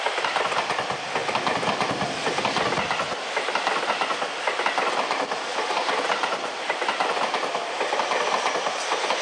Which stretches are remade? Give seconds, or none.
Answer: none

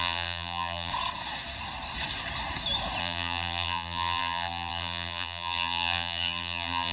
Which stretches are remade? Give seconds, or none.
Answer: 0.0-0.9 (vocoder, BigVGAN v2); 3.0-6.9

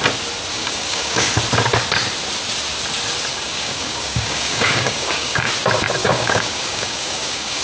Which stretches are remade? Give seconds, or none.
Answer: 0.5-1.3 (codec, DAC); 3.3-5.5; 6.0-7.6

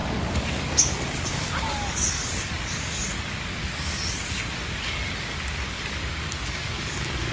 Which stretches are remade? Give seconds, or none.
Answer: 0.0-7.3 (codec, DAC)